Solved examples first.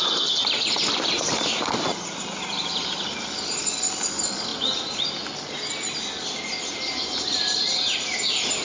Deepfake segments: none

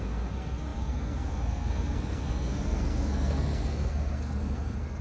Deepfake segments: 0.0-5.0 (codec, SNAC)

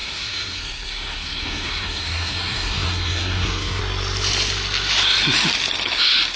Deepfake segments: 0.0-3.8 (codec, SNAC)

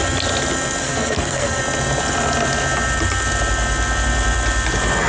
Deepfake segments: 0.8-1.6 (codec, SNAC)

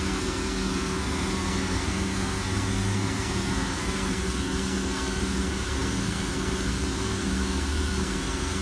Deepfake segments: 0.0-8.6 (codec, SNAC)

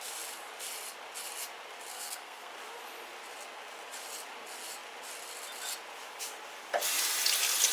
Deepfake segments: 1.9-2.5 (codec, SNAC)

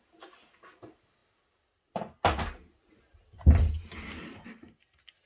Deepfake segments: none